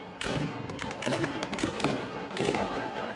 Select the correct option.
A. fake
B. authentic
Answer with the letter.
A